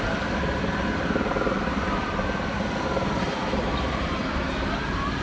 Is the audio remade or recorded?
remade